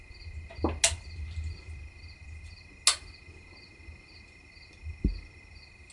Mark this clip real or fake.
real